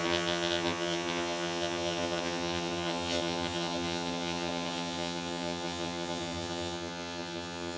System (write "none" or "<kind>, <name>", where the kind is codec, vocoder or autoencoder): vocoder, HiFi-GAN